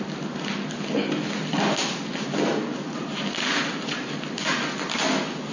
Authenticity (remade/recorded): recorded